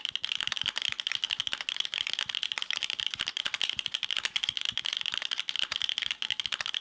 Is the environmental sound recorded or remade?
recorded